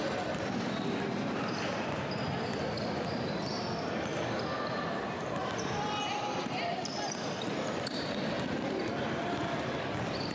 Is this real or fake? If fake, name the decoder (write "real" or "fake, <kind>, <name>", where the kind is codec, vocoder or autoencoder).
real